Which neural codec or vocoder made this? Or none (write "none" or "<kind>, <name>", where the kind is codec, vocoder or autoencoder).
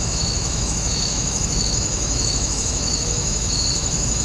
autoencoder, DAC-VAE